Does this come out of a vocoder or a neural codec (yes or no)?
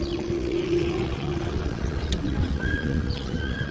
yes